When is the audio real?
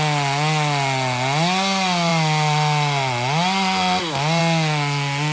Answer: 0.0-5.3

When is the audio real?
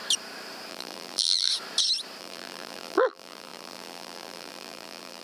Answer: 0.0-0.7; 1.5-2.2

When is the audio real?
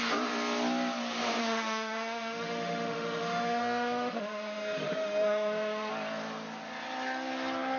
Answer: 0.0-1.4; 5.9-7.8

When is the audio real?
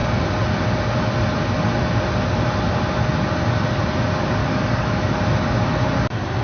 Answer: 0.0-4.4; 5.2-6.4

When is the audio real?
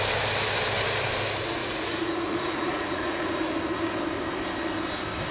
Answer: 0.0-1.6; 3.5-5.3